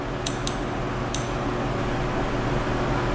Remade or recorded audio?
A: recorded